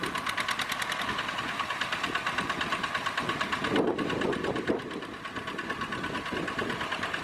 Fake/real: real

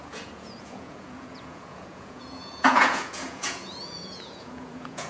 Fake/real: fake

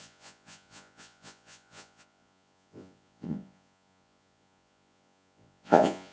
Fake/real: fake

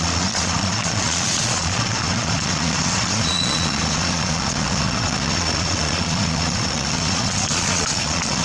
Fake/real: fake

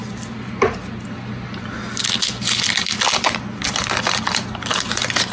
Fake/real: real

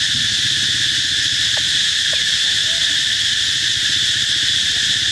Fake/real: real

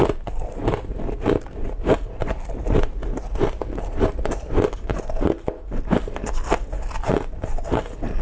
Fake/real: real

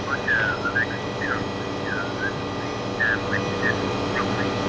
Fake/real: real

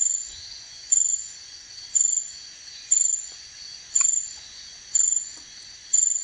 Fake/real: fake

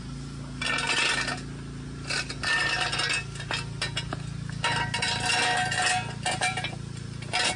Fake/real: real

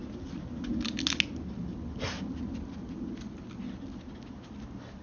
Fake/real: real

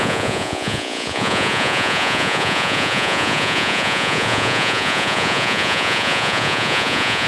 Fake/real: fake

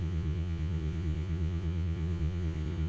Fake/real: fake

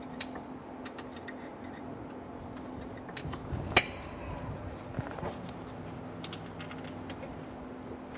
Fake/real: real